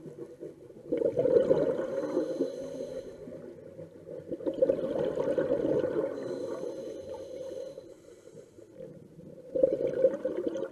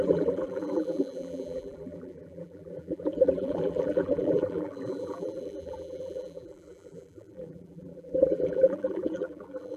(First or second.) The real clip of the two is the first